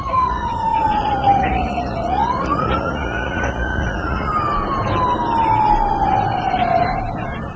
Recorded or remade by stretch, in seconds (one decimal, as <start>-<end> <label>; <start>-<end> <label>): 0.0-4.3 remade; 4.3-7.6 recorded